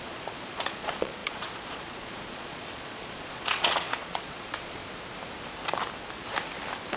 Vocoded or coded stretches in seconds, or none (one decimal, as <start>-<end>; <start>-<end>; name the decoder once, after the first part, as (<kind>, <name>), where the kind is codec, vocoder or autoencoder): 0.0-4.8 (vocoder, Vocos)